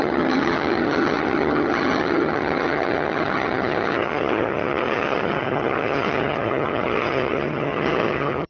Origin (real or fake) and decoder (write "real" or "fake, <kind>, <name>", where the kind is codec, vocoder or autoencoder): fake, vocoder, HiFi-GAN